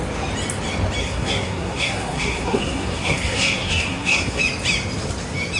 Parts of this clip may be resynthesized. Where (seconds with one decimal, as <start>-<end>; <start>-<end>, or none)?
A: 1.0-4.4